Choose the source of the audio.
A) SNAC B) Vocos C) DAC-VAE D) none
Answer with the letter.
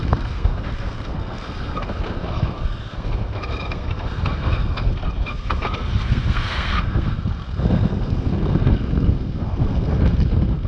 A